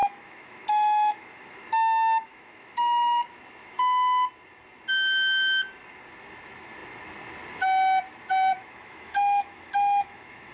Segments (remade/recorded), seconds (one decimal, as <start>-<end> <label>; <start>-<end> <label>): 0.0-3.4 remade; 3.4-8.5 recorded; 8.5-10.5 remade